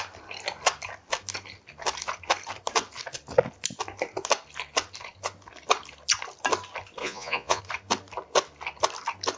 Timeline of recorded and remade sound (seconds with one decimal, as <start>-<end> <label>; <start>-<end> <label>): 0.0-7.0 recorded; 7.0-7.6 remade; 7.6-9.4 recorded